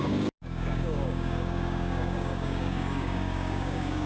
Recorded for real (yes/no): no